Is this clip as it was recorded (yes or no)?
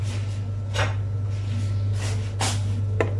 yes